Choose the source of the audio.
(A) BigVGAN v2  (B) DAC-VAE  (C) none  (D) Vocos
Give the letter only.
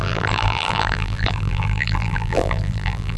A